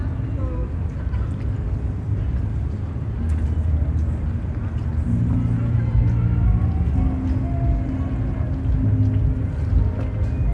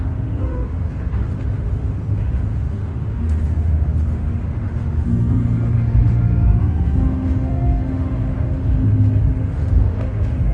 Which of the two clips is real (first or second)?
first